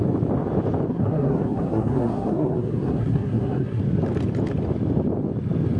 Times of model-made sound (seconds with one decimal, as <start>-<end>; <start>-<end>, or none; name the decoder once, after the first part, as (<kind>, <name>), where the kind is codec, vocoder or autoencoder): 0.9-3.8 (codec, SNAC)